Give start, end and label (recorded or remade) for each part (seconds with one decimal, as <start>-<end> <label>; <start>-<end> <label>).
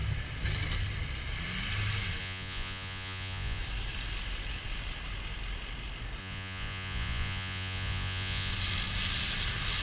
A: 0.0-2.2 recorded; 2.2-3.6 remade; 3.6-6.2 recorded; 6.2-8.5 remade; 8.5-9.8 recorded